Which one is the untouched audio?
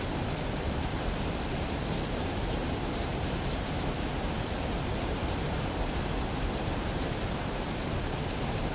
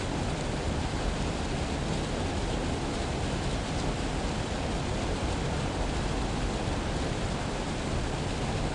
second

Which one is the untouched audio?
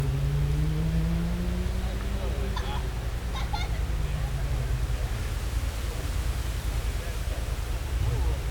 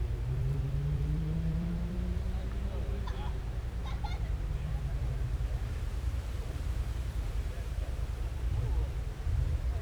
first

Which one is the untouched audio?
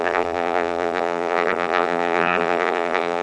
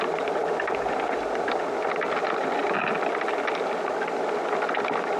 second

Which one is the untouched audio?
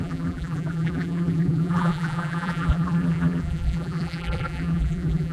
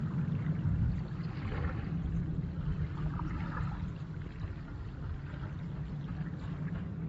second